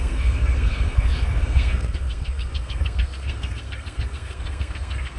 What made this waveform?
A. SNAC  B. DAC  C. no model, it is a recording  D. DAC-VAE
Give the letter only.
A